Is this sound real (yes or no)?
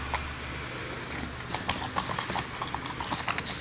yes